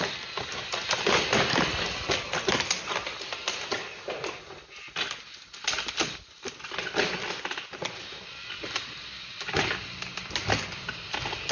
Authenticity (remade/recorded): recorded